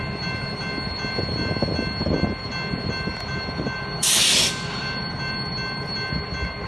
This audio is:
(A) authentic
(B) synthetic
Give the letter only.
A